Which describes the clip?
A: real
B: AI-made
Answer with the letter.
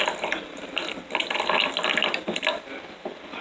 A